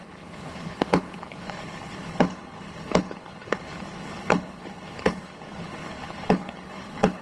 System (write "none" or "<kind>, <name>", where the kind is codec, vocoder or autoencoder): codec, HILCodec